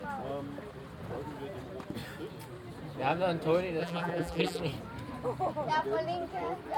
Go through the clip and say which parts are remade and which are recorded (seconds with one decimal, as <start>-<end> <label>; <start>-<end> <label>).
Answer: 0.0-3.8 recorded; 3.8-4.6 remade; 4.6-6.8 recorded